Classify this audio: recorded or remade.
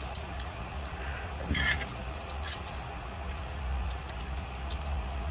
remade